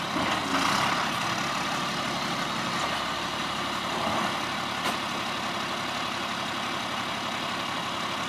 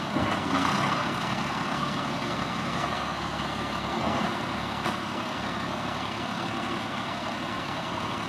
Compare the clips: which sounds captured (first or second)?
first